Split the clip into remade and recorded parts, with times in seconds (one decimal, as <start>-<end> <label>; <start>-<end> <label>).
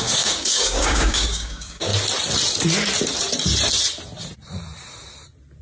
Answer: 0.0-1.9 remade; 1.9-5.6 recorded